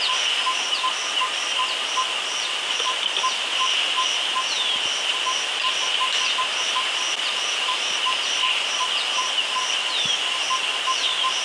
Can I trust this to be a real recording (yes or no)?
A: yes